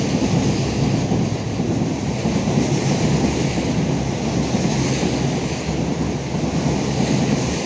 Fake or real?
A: real